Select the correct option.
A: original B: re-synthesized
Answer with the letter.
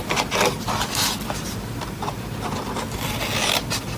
A